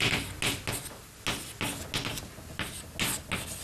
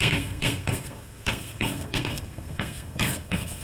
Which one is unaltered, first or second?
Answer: first